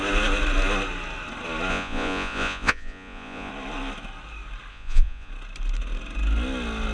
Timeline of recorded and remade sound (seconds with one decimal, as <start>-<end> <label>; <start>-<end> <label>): 0.0-1.7 recorded; 1.7-3.5 remade; 3.5-4.7 recorded; 4.7-5.3 remade; 5.3-6.9 recorded